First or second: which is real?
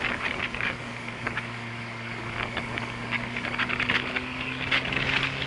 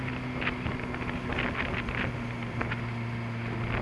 second